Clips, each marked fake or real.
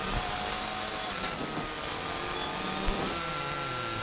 real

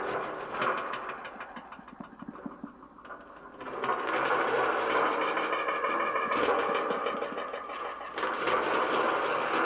real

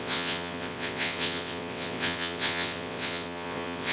fake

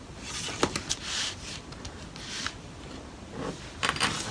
real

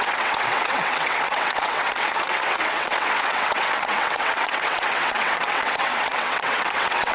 fake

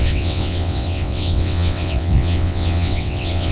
fake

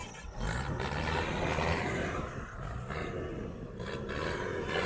real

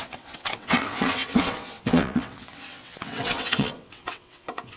fake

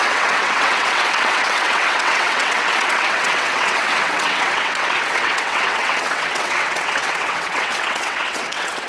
fake